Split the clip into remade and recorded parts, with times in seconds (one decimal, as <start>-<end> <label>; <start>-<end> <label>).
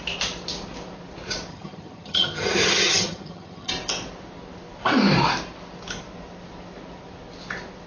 0.0-1.5 recorded; 1.5-3.7 remade; 3.7-7.9 recorded